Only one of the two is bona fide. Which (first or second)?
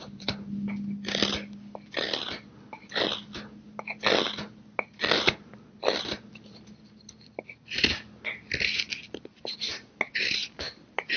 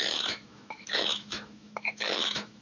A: first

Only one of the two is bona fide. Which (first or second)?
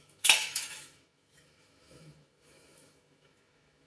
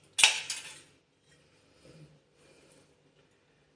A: second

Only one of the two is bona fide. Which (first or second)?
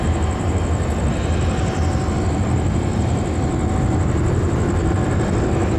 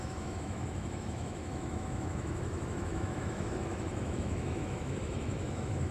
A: first